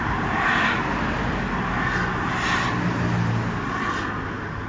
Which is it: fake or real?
real